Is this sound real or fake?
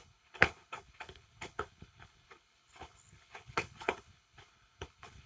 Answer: fake